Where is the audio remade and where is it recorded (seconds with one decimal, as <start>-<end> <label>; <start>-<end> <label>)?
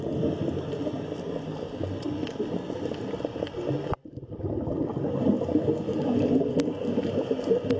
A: 0.0-7.8 recorded